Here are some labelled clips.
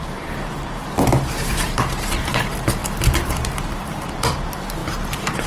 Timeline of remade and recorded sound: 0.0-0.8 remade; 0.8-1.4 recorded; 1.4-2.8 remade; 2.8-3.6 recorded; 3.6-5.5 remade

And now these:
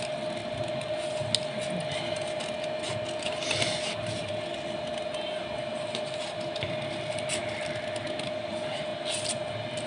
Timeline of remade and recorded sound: 0.0-0.4 remade; 0.4-3.2 recorded; 3.2-7.4 remade; 7.4-8.5 recorded; 8.5-8.9 remade; 8.9-9.9 recorded

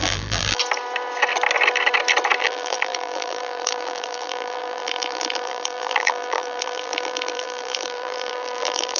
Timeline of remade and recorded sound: 0.0-0.6 remade; 0.6-2.4 recorded; 2.4-9.0 remade

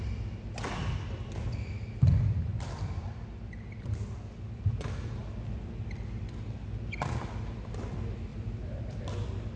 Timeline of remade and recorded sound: 0.0-8.3 recorded; 8.3-9.0 remade; 9.0-9.6 recorded

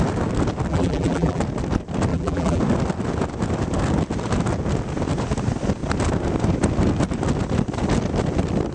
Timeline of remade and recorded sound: 0.0-0.7 recorded; 0.7-1.4 remade; 1.4-2.1 recorded; 2.1-2.6 remade; 2.6-8.7 recorded